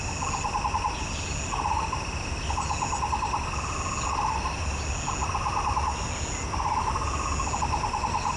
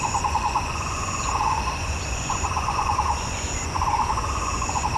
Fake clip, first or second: second